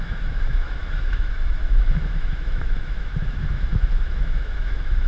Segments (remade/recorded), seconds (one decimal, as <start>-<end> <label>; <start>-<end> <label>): 0.0-5.1 remade